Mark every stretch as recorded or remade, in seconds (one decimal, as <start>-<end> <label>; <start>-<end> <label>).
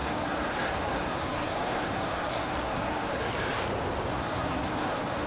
0.0-3.2 remade; 3.2-4.1 recorded; 4.1-5.3 remade